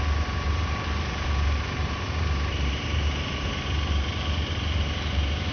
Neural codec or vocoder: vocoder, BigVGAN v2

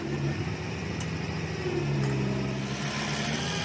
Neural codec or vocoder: none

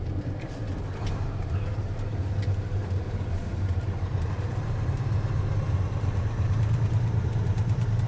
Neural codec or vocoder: vocoder, BigVGAN v2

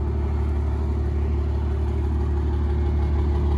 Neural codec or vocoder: none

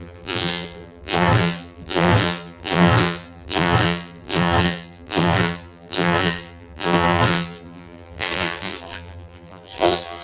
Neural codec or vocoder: vocoder, BigVGAN v2